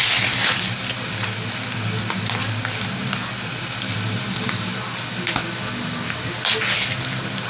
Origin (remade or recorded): recorded